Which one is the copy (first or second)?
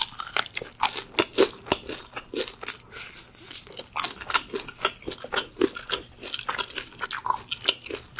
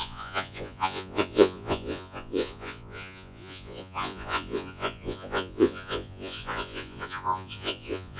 second